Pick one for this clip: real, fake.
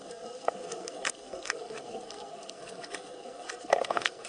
fake